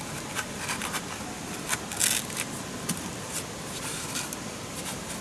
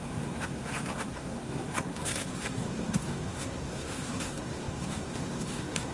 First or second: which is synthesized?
second